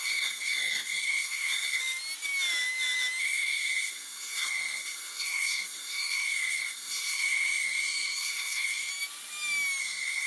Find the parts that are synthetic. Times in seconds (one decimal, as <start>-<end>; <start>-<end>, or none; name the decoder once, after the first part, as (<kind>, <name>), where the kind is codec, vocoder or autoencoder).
0.0-1.8 (codec, SNAC); 3.2-8.9; 9.8-10.3